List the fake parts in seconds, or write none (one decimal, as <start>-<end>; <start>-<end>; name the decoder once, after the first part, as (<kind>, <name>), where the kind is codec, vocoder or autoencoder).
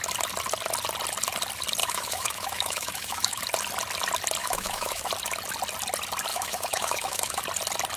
1.8-3.4 (autoencoder, DAC-VAE); 4.4-5.1; 6.3-7.4